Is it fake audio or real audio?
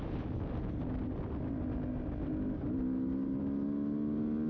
real